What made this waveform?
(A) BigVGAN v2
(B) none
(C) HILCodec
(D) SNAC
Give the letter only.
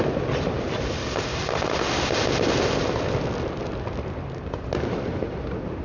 B